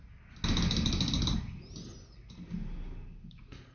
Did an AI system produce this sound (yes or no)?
no